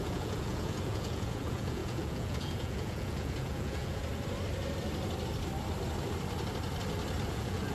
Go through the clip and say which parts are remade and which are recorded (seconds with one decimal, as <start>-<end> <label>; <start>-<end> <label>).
0.0-4.0 remade; 4.0-7.3 recorded; 7.3-7.7 remade